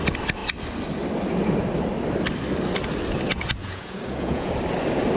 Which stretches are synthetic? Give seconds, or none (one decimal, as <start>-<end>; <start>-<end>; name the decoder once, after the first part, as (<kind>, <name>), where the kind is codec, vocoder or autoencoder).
3.6-4.5 (vocoder, Vocos)

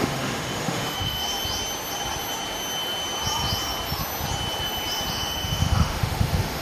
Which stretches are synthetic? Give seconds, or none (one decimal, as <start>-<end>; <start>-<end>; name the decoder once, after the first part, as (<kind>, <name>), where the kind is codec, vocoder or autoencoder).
0.0-1.3 (autoencoder, DAC-VAE); 5.1-6.6

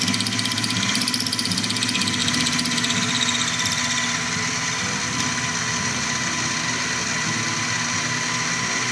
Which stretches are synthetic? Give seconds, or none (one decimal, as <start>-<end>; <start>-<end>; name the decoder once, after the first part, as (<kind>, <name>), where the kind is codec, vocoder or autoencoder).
none

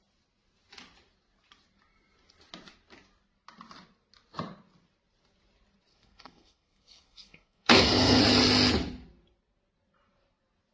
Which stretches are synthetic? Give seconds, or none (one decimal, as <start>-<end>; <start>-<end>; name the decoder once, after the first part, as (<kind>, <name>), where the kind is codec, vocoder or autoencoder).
5.9-8.2 (codec, SNAC)